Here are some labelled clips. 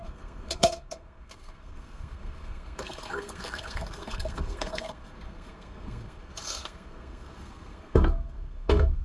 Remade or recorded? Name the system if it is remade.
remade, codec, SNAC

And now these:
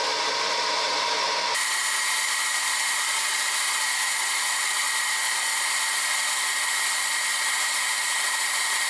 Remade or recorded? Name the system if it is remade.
recorded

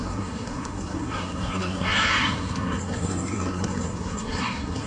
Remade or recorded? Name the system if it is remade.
remade, codec, SNAC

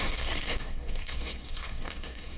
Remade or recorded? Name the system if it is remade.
remade, codec, SNAC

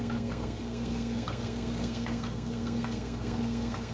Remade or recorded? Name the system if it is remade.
remade, codec, SNAC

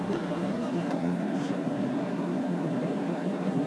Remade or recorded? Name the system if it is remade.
remade, codec, SNAC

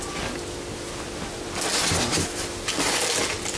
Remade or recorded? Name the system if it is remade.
recorded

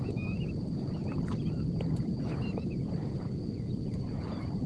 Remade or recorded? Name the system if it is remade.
recorded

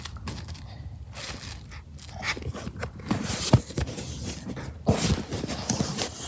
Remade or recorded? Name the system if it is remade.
recorded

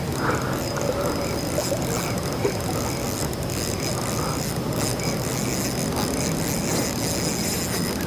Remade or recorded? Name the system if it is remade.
recorded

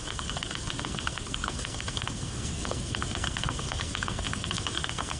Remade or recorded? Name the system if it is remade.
remade, codec, SNAC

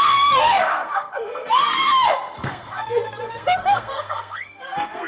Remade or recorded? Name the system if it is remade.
remade, codec, SNAC